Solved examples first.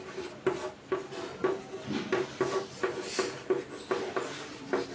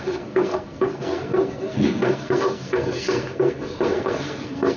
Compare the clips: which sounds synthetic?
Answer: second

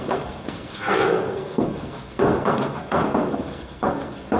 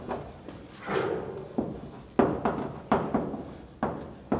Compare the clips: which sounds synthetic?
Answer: first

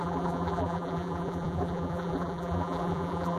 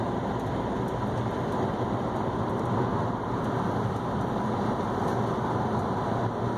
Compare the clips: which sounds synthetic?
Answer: first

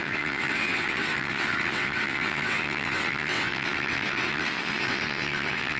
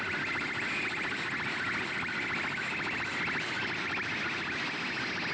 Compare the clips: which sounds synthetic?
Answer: first